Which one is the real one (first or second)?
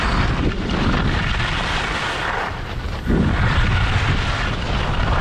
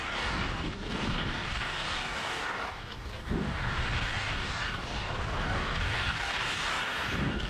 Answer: first